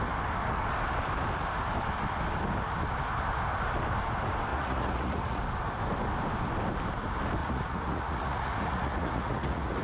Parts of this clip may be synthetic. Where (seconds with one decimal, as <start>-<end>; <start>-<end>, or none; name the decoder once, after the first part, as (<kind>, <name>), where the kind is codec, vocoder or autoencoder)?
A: 4.5-5.4 (vocoder, Vocos); 7.4-9.8